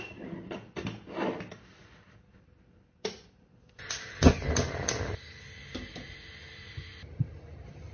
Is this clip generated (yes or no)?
no